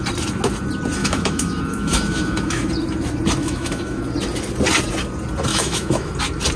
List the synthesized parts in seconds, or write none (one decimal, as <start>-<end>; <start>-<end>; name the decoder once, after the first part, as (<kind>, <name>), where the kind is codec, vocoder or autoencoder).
1.0-2.7 (autoencoder, DAC-VAE); 3.4-4.0; 5.5-6.1